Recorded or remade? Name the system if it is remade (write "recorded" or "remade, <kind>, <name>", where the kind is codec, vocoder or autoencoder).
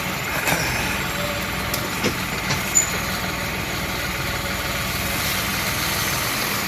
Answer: recorded